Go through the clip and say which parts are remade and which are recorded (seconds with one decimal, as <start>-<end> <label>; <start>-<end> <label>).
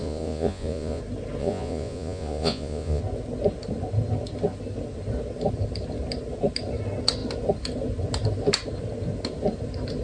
0.0-1.0 remade; 1.0-1.4 recorded; 1.4-3.0 remade; 3.0-10.0 recorded